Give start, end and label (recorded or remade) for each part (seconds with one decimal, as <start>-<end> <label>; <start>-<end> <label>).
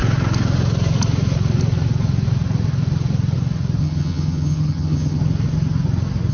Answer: 0.0-3.8 recorded; 3.8-5.2 remade; 5.2-6.3 recorded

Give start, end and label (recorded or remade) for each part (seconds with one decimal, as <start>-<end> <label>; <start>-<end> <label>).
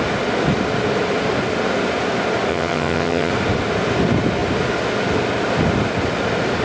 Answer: 0.0-2.5 recorded; 2.5-3.3 remade; 3.3-6.6 recorded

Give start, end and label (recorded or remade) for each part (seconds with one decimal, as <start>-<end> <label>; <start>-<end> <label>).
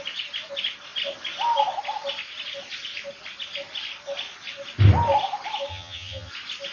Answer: 0.0-5.7 recorded; 5.7-6.3 remade; 6.3-6.7 recorded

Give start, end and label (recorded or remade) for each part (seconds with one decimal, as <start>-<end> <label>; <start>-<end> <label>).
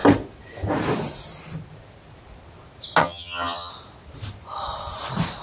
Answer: 0.0-3.0 recorded; 3.0-3.7 remade; 3.7-5.4 recorded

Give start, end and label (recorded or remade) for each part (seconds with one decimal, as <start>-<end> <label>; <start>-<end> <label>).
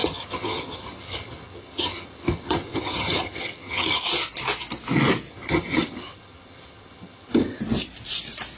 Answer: 0.0-4.0 remade; 4.0-5.3 recorded; 5.3-7.6 remade; 7.6-8.6 recorded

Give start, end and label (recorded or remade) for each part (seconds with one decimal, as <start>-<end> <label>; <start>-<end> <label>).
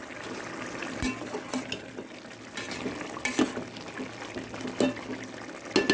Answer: 0.0-5.9 recorded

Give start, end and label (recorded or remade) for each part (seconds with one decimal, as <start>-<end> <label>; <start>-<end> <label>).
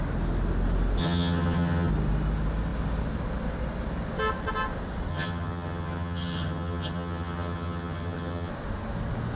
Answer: 0.0-1.0 recorded; 1.0-1.9 remade; 1.9-5.1 recorded; 5.1-8.5 remade; 8.5-9.4 recorded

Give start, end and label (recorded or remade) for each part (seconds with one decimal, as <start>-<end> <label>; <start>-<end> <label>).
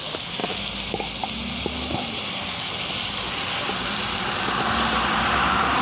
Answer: 0.0-5.8 recorded